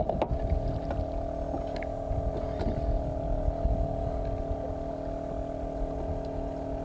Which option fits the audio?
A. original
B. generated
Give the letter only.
A